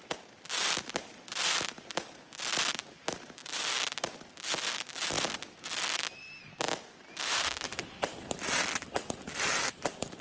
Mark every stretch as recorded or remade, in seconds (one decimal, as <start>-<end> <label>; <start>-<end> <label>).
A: 0.0-3.4 remade; 3.4-5.8 recorded; 5.8-10.2 remade